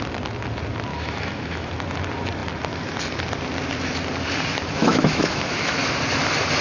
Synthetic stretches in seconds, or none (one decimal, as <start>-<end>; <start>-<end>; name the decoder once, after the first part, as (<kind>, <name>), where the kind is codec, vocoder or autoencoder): 0.9-1.7 (autoencoder, DAC-VAE); 4.8-5.8